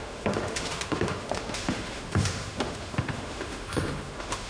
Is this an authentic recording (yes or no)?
no